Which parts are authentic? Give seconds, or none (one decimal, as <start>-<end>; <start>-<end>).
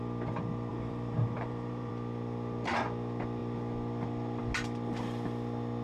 0.0-0.7; 1.9-5.8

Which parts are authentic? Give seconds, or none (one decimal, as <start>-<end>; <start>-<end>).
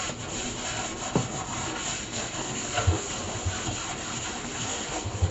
0.0-2.1; 3.1-4.4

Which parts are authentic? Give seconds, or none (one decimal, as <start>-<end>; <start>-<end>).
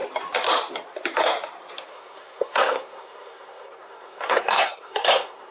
0.0-1.9